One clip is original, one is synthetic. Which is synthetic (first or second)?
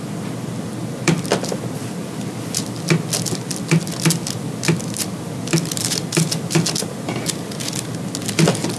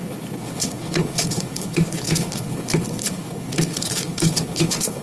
second